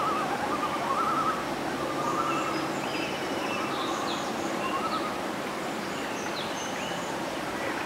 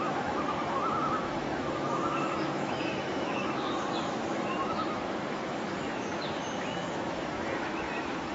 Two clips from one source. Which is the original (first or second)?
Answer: first